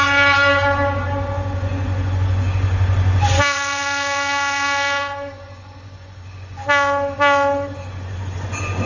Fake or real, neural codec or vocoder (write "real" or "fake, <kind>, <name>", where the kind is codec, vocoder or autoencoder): fake, vocoder, Vocos